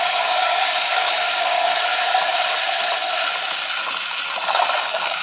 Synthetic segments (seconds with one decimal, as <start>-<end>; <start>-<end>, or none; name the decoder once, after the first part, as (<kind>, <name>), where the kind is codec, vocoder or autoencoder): 0.0-1.7 (codec, DAC); 4.8-5.2